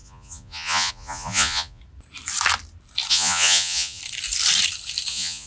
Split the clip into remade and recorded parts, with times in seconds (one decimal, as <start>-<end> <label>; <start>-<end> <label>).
0.0-1.8 remade; 1.8-3.1 recorded; 3.1-4.0 remade; 4.0-5.1 recorded; 5.1-5.5 remade